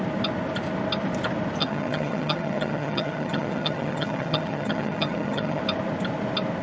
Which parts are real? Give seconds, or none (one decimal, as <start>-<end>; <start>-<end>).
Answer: 0.0-1.6; 5.6-6.6